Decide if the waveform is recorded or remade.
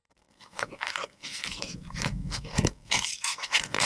remade